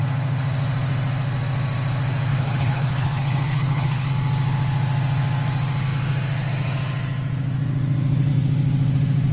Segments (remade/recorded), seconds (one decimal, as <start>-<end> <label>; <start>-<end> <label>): 0.0-2.3 recorded; 2.3-4.1 remade; 4.1-9.3 recorded